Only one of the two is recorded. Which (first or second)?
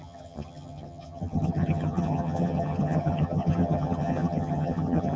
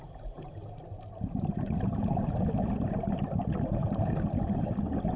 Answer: second